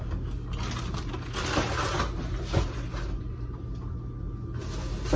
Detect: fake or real real